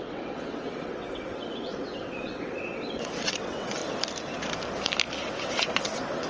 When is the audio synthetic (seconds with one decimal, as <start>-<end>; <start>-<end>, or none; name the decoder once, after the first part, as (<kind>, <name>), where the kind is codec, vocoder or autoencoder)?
0.0-3.8 (vocoder, WaveNeXt); 5.2-6.3